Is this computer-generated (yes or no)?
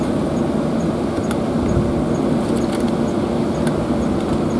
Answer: no